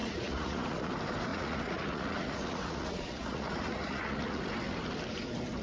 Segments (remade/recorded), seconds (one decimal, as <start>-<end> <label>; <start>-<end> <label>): 0.0-0.9 remade; 0.9-1.3 recorded; 1.3-4.4 remade; 4.4-5.6 recorded